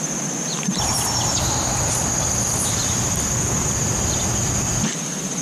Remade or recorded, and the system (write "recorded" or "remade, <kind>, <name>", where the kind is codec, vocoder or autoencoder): recorded